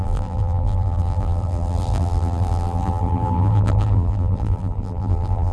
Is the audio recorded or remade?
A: remade